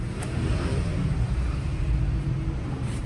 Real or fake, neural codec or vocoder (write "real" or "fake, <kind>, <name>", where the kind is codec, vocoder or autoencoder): fake, vocoder, BigVGAN v2